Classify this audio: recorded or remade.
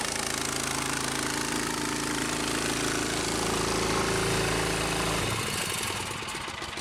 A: recorded